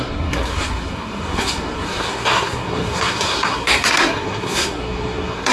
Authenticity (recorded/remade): remade